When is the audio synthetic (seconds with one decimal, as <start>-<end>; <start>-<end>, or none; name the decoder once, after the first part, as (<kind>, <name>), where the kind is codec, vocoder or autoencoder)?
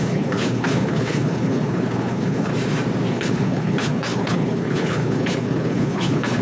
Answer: 0.0-2.5 (codec, HILCodec); 3.1-6.4